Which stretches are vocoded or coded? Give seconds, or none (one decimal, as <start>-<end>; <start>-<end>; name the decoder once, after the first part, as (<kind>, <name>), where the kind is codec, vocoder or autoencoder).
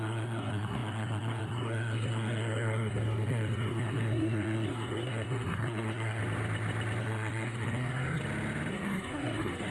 0.0-6.2 (codec, SNAC); 7.0-8.2; 8.7-9.7